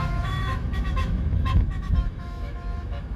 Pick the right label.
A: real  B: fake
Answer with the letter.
B